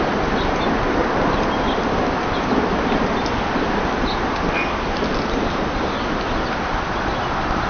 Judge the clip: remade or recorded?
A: recorded